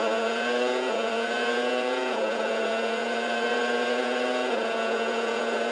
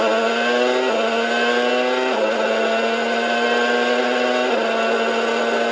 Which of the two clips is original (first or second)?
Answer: second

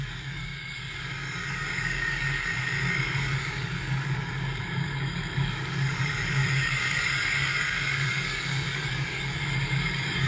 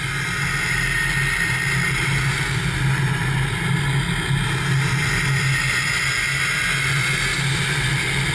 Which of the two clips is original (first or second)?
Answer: second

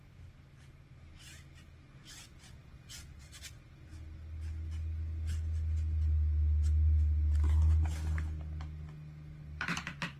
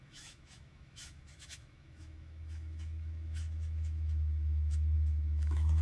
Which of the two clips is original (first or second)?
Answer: first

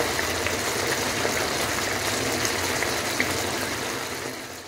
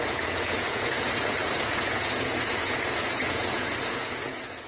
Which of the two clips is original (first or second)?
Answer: first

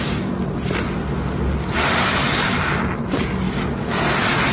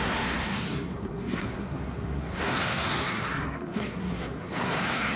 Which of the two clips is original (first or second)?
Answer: first